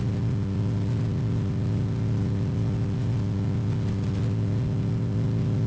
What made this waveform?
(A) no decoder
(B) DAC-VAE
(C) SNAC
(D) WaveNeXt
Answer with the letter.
A